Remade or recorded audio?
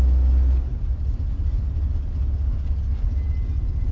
recorded